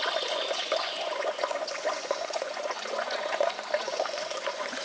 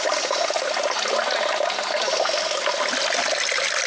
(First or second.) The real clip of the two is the second